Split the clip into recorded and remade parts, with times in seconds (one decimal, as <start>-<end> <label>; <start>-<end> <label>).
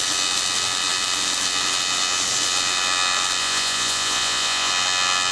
0.0-3.4 recorded; 3.4-4.7 remade; 4.7-5.3 recorded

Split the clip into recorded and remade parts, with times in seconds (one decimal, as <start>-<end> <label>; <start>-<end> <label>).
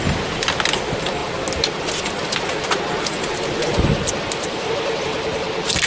0.0-5.9 recorded